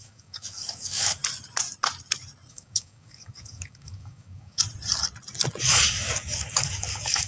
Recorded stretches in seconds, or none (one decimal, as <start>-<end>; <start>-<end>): 1.2-2.5; 4.6-5.6